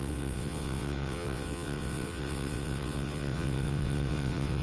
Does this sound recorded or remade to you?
remade